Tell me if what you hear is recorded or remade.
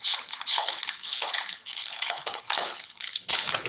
remade